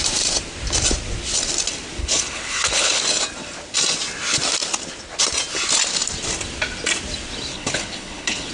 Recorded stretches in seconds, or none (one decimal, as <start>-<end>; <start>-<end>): 0.0-2.0; 3.0-7.5